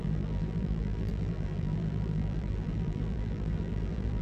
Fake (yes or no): yes